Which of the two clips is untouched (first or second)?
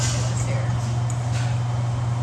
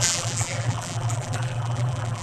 first